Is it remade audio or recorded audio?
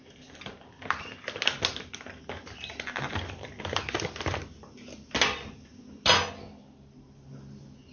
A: recorded